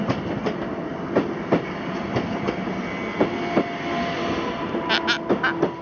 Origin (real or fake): real